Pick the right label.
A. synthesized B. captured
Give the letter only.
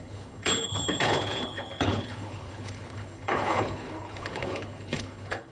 A